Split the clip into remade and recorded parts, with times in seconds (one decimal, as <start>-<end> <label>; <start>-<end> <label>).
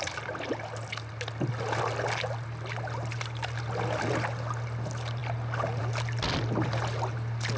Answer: 0.0-7.6 recorded